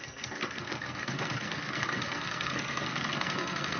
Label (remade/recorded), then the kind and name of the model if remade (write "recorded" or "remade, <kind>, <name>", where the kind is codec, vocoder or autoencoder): remade, codec, SNAC